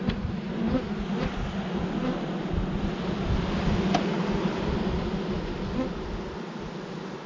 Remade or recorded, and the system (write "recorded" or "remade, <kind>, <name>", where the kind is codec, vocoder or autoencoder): recorded